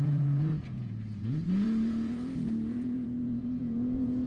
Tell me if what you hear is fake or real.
fake